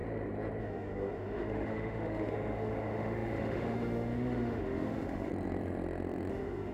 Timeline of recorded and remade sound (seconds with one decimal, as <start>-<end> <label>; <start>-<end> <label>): 0.0-0.6 recorded; 0.6-5.3 remade; 5.3-6.3 recorded; 6.3-6.7 remade